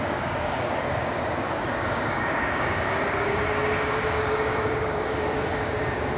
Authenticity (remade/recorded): remade